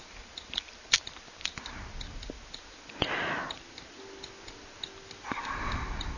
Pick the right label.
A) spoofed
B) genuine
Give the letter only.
B